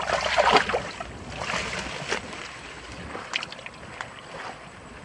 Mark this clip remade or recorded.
recorded